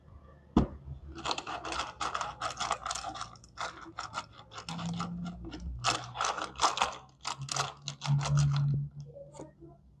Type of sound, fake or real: real